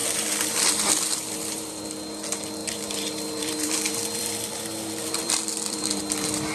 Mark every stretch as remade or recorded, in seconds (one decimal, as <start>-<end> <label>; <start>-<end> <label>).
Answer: 0.0-1.8 remade; 1.8-2.6 recorded; 2.6-6.0 remade; 6.0-6.5 recorded